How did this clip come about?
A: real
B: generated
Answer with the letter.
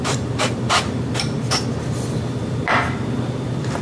B